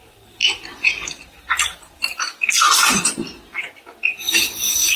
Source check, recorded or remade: remade